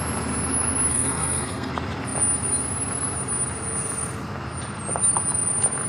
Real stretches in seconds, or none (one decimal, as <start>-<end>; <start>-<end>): 0.0-0.9; 1.7-5.9